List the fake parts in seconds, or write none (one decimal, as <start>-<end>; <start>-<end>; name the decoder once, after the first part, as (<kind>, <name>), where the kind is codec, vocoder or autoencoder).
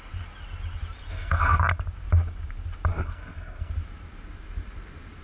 1.1-1.6 (codec, SNAC); 2.9-3.7